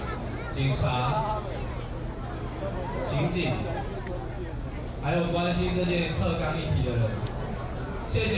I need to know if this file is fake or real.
real